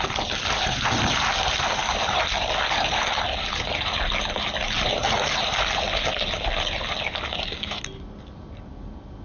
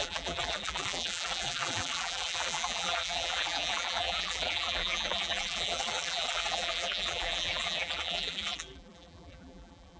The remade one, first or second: second